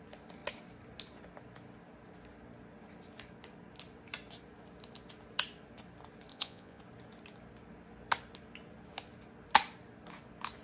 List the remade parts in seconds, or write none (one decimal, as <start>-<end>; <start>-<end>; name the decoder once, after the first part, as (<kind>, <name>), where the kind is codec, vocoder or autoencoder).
6.3-6.8 (vocoder, Vocos)